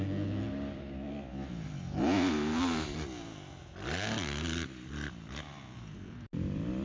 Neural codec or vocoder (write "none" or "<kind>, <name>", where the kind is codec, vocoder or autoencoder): none